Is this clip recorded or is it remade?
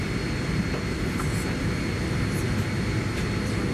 recorded